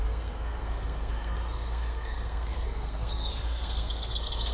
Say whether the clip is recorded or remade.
remade